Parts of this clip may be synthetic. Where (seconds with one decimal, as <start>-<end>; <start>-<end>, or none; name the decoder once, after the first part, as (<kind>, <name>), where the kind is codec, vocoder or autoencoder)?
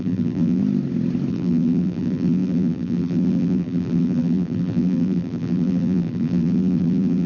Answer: 0.0-0.6 (vocoder, BigVGAN v2); 1.3-7.3